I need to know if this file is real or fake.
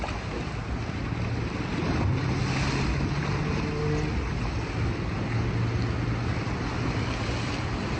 real